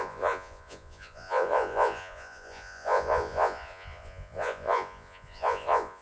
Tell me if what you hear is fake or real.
fake